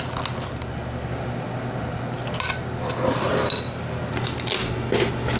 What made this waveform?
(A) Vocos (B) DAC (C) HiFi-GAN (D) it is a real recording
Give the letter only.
D